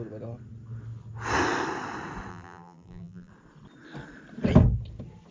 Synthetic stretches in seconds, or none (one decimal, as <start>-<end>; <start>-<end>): 2.3-3.3